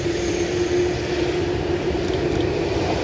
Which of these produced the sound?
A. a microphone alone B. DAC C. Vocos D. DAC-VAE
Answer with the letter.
A